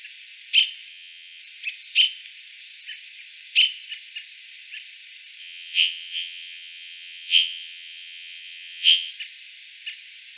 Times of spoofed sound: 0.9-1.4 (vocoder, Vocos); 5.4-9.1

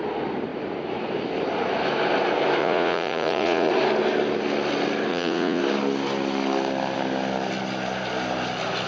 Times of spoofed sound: 2.6-3.7 (vocoder, Vocos); 5.1-5.6

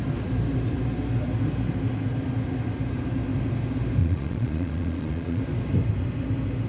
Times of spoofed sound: 4.0-5.4 (vocoder, Vocos)

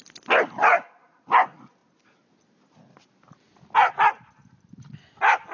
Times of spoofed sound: none

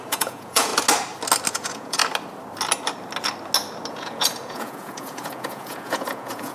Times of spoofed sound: 0.0-0.7 (vocoder, Vocos); 1.5-2.0; 3.9-6.5

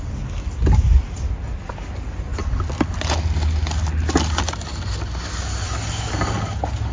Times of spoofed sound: none

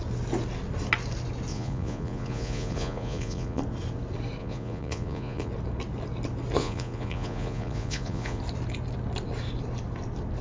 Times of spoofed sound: 1.5-3.6 (vocoder, Vocos); 4.4-5.5; 6.6-8.4